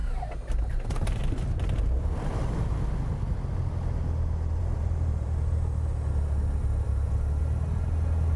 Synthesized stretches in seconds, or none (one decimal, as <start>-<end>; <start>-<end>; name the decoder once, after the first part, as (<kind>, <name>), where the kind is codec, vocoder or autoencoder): 0.6-1.2 (vocoder, BigVGAN v2); 4.6-5.9